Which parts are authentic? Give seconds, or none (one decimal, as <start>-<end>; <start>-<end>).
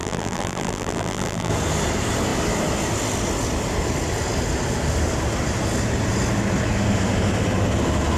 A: 1.5-8.2